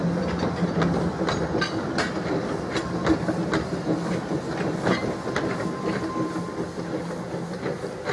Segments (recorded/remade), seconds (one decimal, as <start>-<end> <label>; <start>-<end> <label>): 0.0-8.1 recorded